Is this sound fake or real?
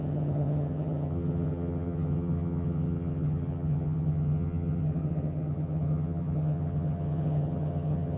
fake